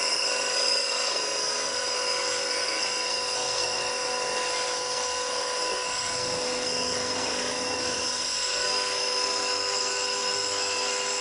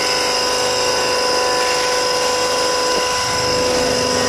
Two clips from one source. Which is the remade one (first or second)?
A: first